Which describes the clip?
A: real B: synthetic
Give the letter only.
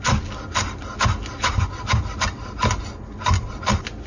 A